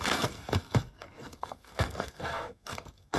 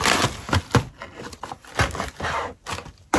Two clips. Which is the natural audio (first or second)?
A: second